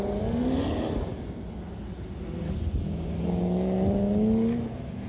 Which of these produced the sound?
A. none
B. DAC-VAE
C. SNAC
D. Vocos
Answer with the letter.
A